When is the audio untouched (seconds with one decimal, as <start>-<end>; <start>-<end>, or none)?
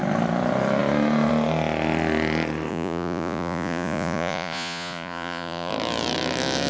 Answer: 0.0-2.7; 5.7-6.7